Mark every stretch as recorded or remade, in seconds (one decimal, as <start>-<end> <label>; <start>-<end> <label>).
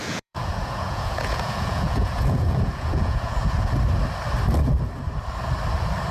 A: 0.0-3.7 remade; 3.7-6.1 recorded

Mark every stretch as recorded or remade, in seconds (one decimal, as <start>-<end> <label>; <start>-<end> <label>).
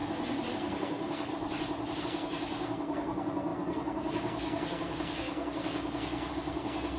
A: 0.0-0.5 recorded; 0.5-1.3 remade; 1.3-2.0 recorded; 2.0-7.0 remade